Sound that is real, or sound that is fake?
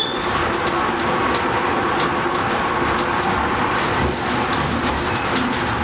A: real